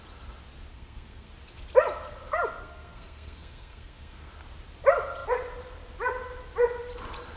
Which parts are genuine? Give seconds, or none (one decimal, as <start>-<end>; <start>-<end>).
0.0-0.7; 1.3-2.6; 4.3-7.4